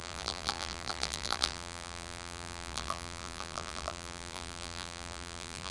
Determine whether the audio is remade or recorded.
remade